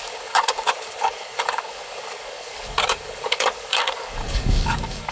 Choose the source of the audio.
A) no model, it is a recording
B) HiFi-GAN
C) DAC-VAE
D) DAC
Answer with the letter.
D